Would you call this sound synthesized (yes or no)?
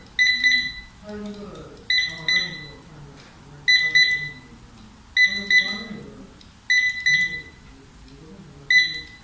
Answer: no